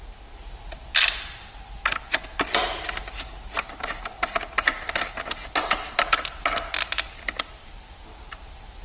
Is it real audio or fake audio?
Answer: real